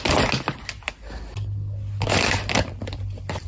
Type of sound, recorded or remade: recorded